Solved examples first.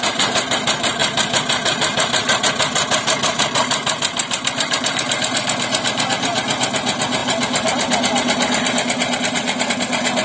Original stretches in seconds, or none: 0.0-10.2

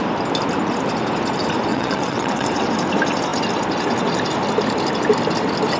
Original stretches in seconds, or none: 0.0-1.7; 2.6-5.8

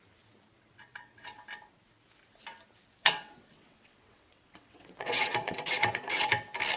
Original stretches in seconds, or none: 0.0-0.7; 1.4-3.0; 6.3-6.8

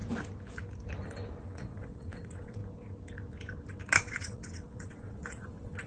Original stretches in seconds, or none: 0.0-1.4; 2.6-4.0

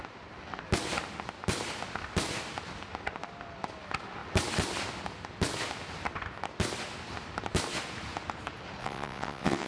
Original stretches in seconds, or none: 0.0-8.8